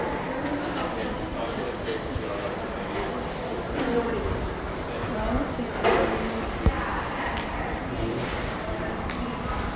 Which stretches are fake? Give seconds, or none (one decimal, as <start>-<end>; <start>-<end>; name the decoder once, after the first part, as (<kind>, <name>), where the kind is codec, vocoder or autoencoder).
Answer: none